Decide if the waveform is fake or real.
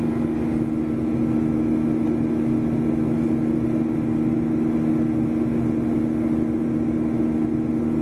real